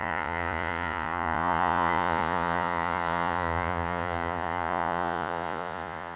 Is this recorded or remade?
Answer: remade